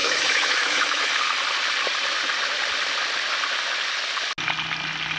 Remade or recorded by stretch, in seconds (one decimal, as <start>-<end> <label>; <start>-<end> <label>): 0.0-1.1 remade; 1.1-5.2 recorded